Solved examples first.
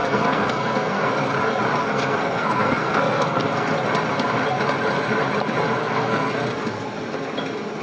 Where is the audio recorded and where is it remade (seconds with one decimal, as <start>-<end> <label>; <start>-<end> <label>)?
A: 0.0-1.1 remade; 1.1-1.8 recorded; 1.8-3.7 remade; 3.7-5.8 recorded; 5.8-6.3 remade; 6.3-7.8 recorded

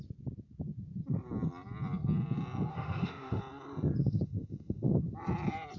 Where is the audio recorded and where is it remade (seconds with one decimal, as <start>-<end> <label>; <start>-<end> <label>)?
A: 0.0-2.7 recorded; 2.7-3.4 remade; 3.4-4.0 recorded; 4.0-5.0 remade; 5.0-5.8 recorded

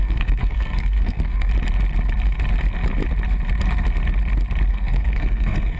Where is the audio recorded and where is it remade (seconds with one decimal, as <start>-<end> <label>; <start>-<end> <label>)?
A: 0.0-1.5 remade; 1.5-4.7 recorded; 4.7-5.8 remade